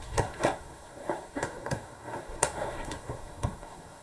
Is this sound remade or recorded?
remade